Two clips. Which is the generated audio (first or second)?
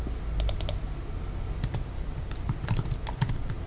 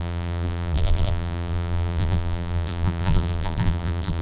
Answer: second